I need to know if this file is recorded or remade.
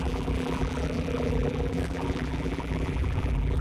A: remade